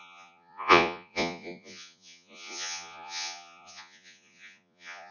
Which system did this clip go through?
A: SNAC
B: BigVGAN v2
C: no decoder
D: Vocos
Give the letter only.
D